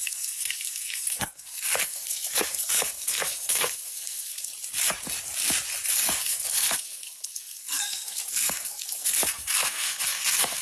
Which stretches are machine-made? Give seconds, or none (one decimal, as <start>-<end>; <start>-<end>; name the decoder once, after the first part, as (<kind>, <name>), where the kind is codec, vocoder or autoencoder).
0.0-4.5 (codec, SNAC); 6.2-10.6